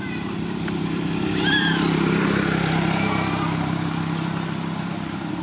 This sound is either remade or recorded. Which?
remade